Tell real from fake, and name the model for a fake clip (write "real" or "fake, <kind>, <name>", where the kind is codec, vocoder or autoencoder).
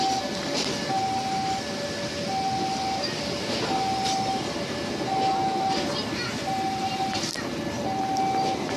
real